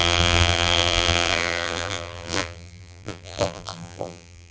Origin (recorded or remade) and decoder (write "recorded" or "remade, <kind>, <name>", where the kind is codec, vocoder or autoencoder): remade, vocoder, BigVGAN v2